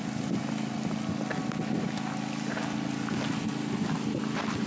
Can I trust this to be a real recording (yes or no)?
yes